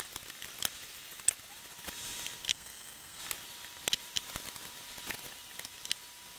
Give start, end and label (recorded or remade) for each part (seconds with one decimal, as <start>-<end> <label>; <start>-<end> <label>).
0.0-2.5 recorded; 2.5-3.2 remade; 3.2-6.4 recorded